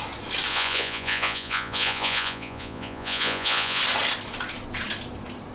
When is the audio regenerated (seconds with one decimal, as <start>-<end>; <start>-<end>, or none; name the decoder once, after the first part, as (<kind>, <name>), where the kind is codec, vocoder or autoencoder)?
0.5-3.8 (vocoder, Vocos)